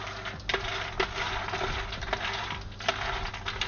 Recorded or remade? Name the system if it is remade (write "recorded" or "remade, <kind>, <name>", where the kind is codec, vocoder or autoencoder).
recorded